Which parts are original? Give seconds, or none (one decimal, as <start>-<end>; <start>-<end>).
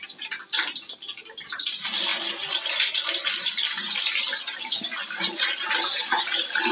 0.0-6.7